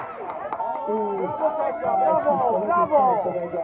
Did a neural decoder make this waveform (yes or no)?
no